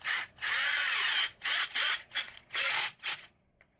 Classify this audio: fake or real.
fake